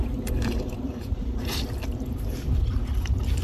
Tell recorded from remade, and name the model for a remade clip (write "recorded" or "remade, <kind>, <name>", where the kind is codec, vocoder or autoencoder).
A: remade, vocoder, BigVGAN v2